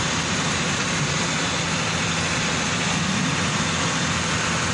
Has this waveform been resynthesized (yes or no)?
no